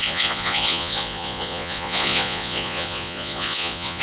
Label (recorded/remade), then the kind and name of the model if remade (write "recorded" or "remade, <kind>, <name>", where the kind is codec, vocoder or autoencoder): remade, vocoder, Vocos